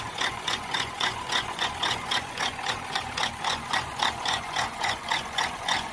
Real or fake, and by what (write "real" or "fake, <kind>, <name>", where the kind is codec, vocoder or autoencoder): fake, vocoder, Vocos